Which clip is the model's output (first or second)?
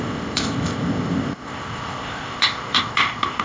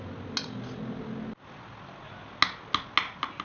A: first